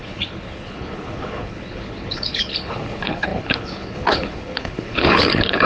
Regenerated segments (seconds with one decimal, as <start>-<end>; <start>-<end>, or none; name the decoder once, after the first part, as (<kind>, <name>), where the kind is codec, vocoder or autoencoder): 0.0-5.7 (codec, HILCodec)